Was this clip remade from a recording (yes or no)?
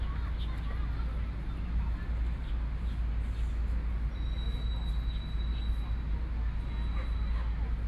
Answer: no